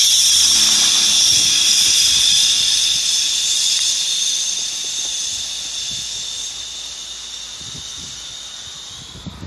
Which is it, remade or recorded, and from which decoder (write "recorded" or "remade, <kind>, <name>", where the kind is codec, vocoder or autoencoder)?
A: recorded